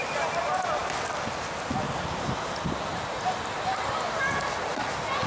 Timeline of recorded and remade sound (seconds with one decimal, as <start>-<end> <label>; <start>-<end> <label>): 0.0-5.3 recorded